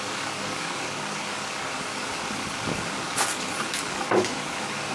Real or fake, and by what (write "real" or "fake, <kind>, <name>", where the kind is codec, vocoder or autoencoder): fake, codec, DAC